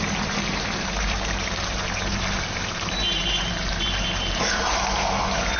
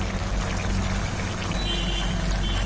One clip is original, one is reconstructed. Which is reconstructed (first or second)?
first